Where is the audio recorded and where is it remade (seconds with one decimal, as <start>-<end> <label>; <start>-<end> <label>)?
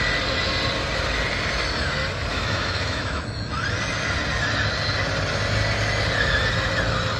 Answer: 0.0-2.3 recorded; 2.3-3.5 remade; 3.5-7.2 recorded